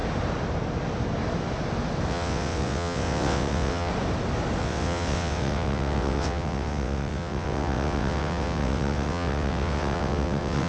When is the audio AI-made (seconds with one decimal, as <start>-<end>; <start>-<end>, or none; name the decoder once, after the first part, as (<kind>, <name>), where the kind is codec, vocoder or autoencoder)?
2.1-3.9 (vocoder, WaveNeXt); 4.6-10.7